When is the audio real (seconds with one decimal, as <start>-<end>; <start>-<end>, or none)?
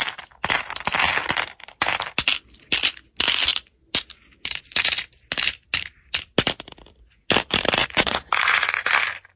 0.0-7.8; 8.9-9.4